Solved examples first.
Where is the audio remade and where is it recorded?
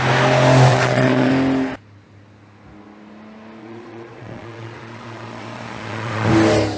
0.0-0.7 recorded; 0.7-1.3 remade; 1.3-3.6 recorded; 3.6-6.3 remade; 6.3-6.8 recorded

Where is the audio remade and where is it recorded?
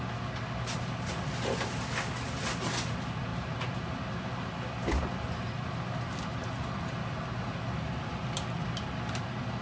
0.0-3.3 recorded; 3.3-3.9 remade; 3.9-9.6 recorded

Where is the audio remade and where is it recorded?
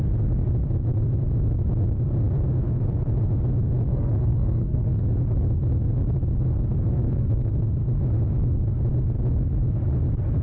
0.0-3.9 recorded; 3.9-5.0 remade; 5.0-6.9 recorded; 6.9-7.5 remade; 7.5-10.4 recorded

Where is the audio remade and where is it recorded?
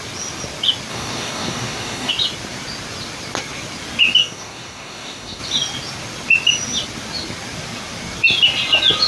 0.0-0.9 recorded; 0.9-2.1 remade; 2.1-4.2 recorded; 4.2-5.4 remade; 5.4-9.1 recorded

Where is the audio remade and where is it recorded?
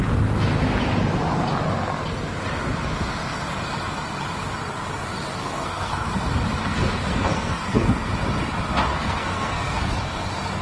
0.0-5.4 recorded; 5.4-6.1 remade; 6.1-6.6 recorded; 6.6-8.1 remade; 8.1-8.9 recorded; 8.9-9.9 remade; 9.9-10.6 recorded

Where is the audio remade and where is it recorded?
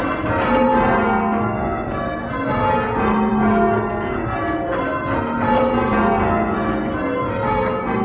0.0-8.0 recorded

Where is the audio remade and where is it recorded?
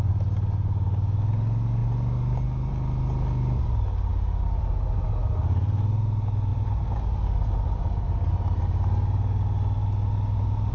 0.0-10.7 recorded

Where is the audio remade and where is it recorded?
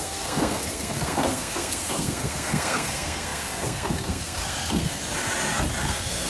0.0-5.0 remade; 5.0-5.8 recorded; 5.8-6.3 remade